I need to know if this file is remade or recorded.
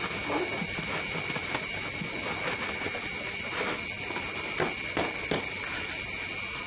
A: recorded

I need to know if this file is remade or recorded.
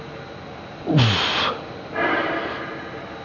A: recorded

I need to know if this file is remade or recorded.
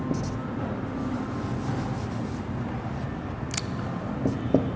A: recorded